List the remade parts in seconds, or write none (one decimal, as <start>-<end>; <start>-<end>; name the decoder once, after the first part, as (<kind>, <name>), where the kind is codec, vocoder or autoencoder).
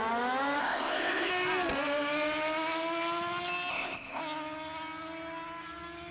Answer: 0.6-1.3 (codec, ZipCodec); 3.7-4.2